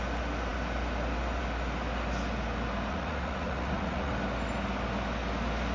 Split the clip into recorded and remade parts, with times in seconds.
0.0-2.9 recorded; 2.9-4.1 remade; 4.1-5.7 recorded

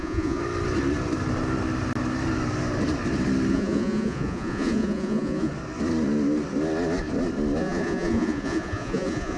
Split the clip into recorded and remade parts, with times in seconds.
0.0-0.4 remade; 0.4-3.5 recorded; 3.5-5.5 remade; 5.5-7.6 recorded; 7.6-9.4 remade